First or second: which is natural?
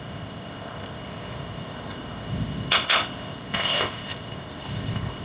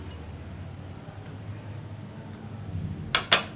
second